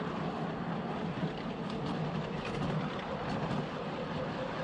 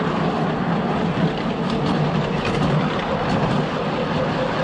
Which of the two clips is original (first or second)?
second